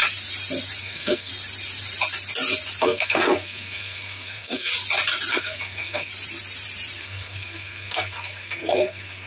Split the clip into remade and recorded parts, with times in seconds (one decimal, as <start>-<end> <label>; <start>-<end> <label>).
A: 0.0-0.8 recorded; 0.8-1.3 remade; 1.3-2.8 recorded; 2.8-4.7 remade; 4.7-5.3 recorded; 5.3-6.1 remade; 6.1-7.0 recorded; 7.0-9.3 remade